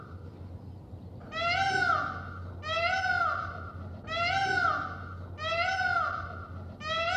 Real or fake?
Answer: real